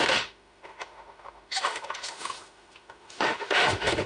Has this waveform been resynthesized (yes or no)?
yes